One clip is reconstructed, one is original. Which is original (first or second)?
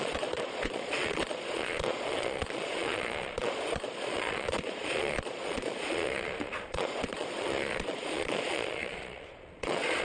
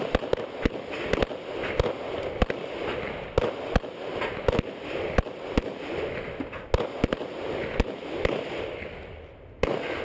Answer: second